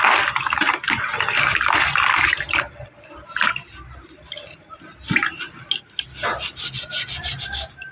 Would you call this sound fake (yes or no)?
no